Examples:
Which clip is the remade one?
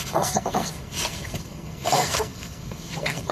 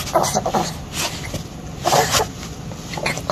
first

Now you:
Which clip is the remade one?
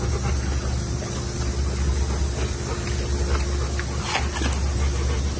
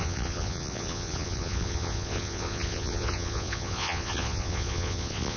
second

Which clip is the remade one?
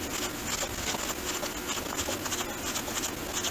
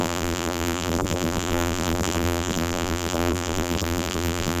second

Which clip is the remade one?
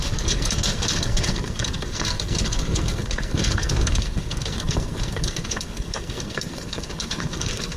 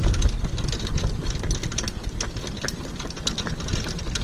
first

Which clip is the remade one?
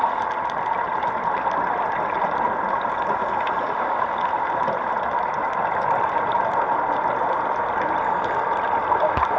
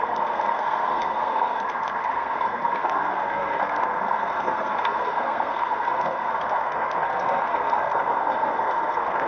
second